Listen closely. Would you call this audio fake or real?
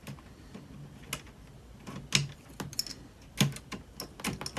real